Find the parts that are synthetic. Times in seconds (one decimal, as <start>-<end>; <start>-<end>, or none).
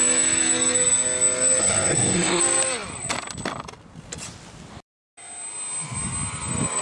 1.6-2.4